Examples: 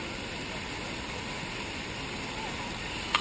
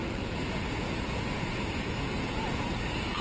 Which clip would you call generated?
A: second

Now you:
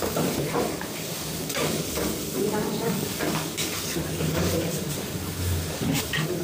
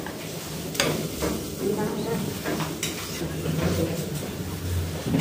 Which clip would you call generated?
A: first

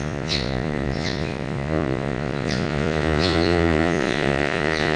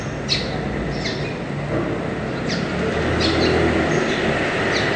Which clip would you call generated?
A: first